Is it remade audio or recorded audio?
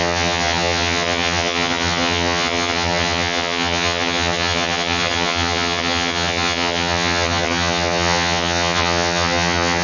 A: remade